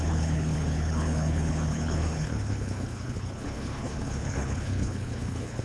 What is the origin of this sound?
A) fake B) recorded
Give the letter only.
A